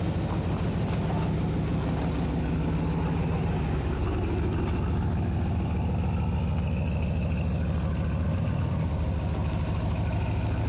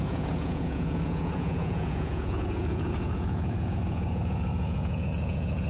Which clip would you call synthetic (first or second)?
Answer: second